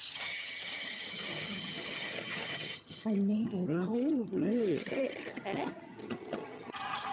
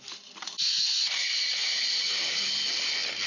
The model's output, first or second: first